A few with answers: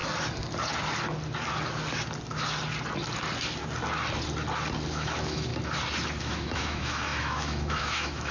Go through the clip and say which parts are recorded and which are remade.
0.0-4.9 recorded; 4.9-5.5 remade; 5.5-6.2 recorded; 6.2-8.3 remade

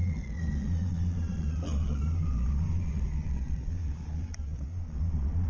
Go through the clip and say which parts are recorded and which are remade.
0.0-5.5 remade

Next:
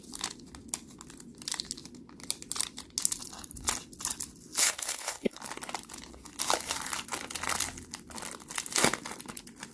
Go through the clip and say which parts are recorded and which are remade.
0.0-4.6 recorded; 4.6-5.4 remade; 5.4-9.7 recorded

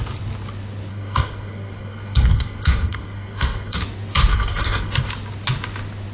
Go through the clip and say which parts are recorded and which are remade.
0.0-0.9 recorded; 0.9-3.8 remade; 3.8-4.3 recorded; 4.3-5.1 remade; 5.1-6.1 recorded

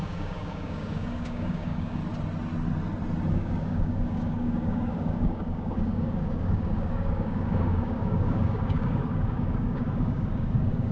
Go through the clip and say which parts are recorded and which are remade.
0.0-2.0 remade; 2.0-3.3 recorded; 3.3-10.9 remade

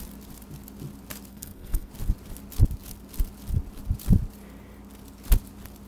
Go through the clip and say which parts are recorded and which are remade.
0.0-1.3 recorded; 1.3-1.9 remade; 1.9-5.9 recorded

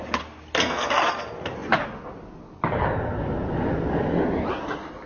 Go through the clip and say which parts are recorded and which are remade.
0.0-5.1 recorded

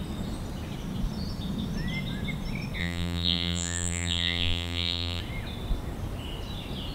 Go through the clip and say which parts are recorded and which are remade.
0.0-2.8 recorded; 2.8-5.2 remade; 5.2-6.9 recorded